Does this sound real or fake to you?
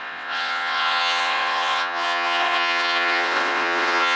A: fake